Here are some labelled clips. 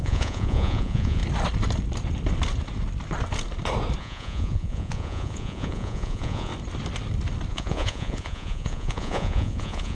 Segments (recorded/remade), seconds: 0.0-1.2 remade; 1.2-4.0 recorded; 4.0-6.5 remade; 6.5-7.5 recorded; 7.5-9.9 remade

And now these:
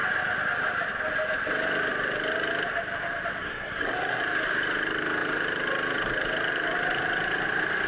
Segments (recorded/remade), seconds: 0.0-3.4 recorded; 3.4-4.2 remade; 4.2-7.9 recorded

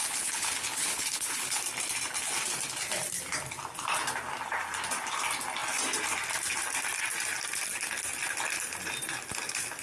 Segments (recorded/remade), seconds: 0.0-1.6 remade; 1.6-9.8 recorded

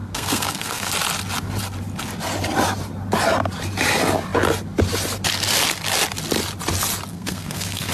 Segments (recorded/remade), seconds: 0.0-0.9 remade; 0.9-7.1 recorded; 7.1-7.9 remade